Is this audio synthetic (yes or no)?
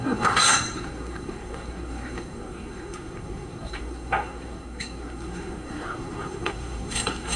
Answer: yes